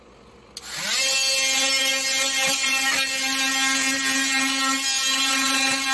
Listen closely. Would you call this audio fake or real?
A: real